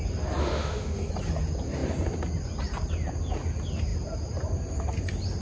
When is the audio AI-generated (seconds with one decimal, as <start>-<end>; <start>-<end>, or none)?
0.4-1.1